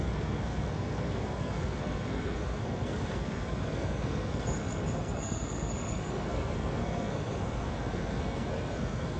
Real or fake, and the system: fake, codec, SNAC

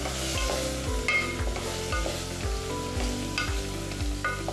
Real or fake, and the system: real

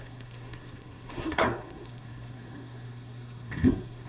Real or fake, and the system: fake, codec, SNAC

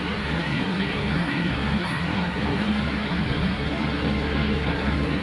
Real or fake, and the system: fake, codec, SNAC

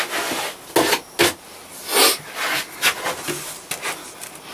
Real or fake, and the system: real